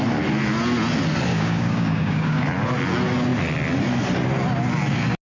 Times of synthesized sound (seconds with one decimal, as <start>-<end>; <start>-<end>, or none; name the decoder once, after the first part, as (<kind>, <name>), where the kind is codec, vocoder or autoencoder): 1.3-2.4 (codec, DAC)